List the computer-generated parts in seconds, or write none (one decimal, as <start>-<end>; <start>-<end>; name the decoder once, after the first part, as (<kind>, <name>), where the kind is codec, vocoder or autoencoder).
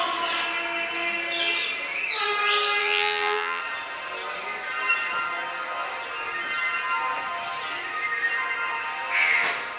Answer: 2.8-3.6 (vocoder, BigVGAN v2)